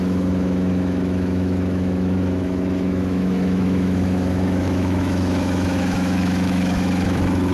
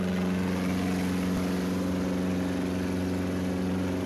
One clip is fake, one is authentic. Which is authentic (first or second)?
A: second